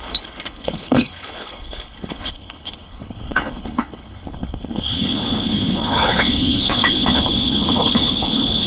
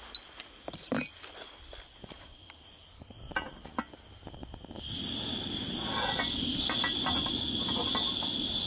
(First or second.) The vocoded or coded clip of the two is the first